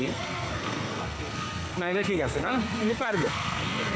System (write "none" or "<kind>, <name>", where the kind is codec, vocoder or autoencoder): codec, SNAC